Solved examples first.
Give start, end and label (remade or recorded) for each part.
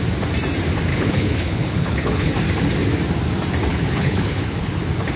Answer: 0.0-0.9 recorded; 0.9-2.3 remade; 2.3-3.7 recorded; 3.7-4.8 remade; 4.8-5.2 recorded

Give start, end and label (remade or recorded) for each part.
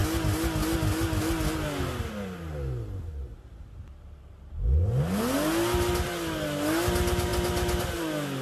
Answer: 0.0-8.4 recorded